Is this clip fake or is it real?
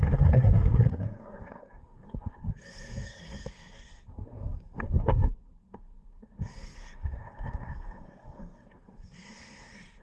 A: fake